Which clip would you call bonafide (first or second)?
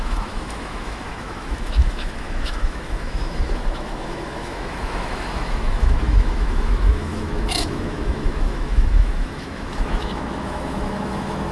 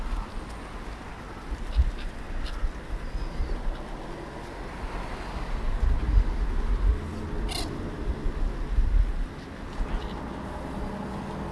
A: second